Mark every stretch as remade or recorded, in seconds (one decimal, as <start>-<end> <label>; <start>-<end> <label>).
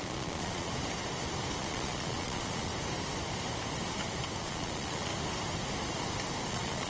0.0-0.7 remade; 0.7-1.6 recorded; 1.6-2.7 remade; 2.7-4.4 recorded; 4.4-5.1 remade; 5.1-6.5 recorded; 6.5-6.9 remade